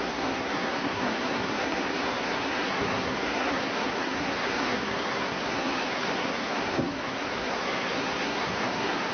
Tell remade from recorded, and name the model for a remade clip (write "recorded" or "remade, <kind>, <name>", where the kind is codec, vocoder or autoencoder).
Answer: remade, codec, SNAC